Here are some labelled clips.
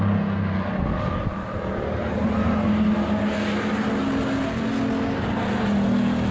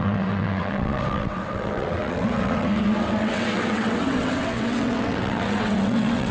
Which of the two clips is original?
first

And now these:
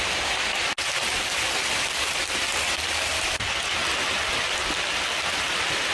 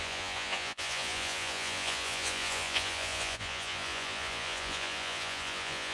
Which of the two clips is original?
first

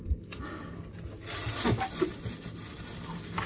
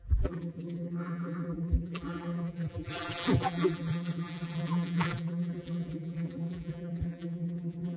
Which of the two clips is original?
first